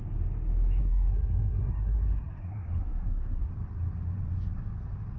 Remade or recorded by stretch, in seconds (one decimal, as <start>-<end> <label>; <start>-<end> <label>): 0.0-0.8 recorded; 0.8-3.5 remade; 3.5-5.2 recorded